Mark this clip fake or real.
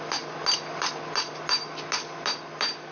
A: real